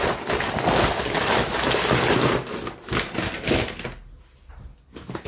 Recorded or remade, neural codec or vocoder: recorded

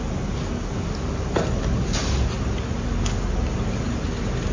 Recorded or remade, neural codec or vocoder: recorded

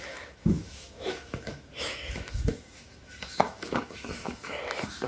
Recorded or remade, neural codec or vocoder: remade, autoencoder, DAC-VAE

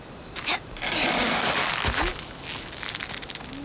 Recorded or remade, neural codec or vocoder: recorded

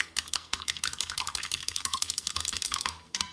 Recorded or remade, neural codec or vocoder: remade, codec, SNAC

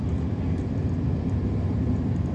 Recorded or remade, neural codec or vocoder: remade, vocoder, BigVGAN v2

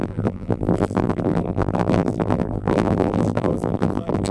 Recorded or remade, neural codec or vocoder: remade, vocoder, BigVGAN v2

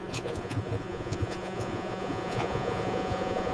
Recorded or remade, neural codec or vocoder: remade, vocoder, Vocos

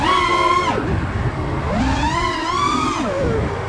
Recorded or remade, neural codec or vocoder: recorded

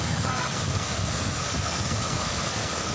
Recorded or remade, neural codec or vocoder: remade, codec, SNAC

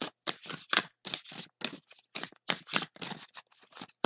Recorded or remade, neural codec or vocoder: recorded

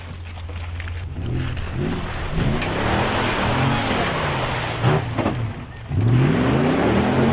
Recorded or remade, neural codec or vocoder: recorded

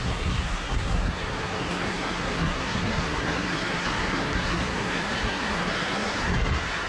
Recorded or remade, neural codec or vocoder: remade, codec, SNAC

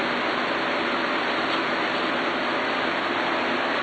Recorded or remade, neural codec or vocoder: recorded